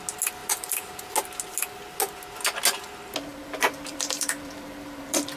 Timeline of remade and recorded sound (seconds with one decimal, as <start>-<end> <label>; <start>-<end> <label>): 0.0-0.4 recorded; 0.4-1.0 remade; 1.0-3.3 recorded; 3.3-5.4 remade